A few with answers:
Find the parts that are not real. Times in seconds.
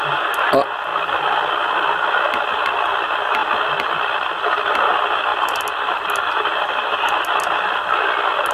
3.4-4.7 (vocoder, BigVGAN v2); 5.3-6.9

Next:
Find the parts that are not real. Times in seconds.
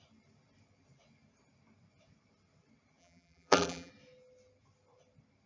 3.0-3.9 (vocoder, BigVGAN v2)